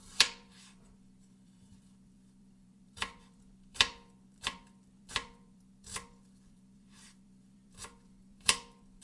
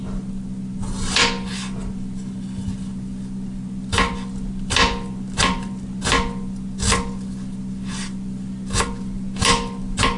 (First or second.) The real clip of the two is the second